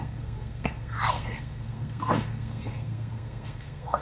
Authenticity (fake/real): fake